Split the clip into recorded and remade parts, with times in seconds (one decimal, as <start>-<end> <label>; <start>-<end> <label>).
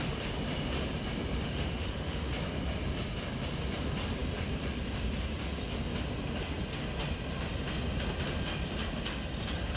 0.0-1.4 recorded; 1.4-2.3 remade; 2.3-9.8 recorded